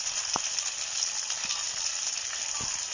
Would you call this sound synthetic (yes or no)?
no